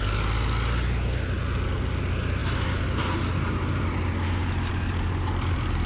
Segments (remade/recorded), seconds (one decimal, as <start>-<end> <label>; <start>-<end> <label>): 0.0-5.9 recorded